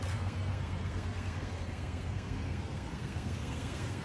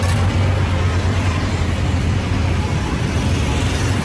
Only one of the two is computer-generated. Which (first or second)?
first